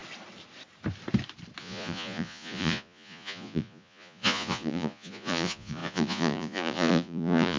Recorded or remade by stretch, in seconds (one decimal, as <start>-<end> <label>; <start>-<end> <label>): 0.0-1.6 recorded; 1.6-7.6 remade